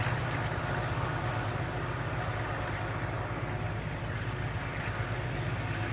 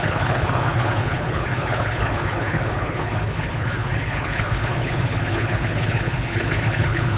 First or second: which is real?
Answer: first